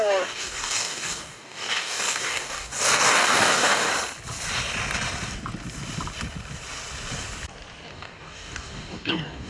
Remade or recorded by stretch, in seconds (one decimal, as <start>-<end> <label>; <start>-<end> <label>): 0.0-3.9 remade; 3.9-7.9 recorded; 7.9-9.5 remade